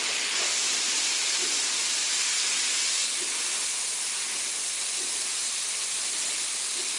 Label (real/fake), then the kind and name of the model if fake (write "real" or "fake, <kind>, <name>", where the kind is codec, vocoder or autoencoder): real